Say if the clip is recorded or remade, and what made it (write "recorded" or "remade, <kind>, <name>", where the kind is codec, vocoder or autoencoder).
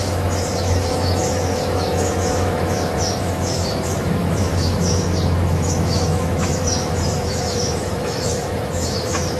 remade, autoencoder, DAC-VAE